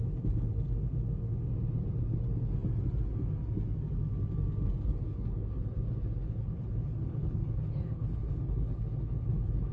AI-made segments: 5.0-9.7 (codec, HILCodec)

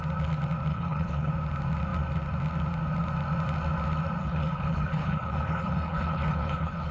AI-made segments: 0.7-1.3 (codec, HILCodec); 4.2-6.9

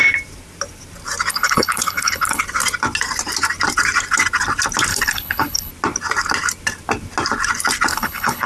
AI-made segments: 1.3-2.4 (codec, HILCodec); 4.9-5.7; 7.9-8.5

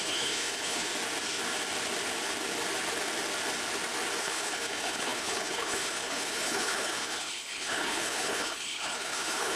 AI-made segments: 0.0-0.9 (codec, HILCodec); 4.2-9.6

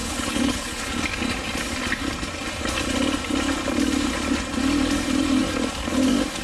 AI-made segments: 0.0-1.0 (codec, HILCodec)

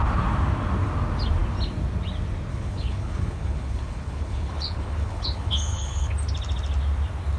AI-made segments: 2.5-6.1 (codec, HILCodec)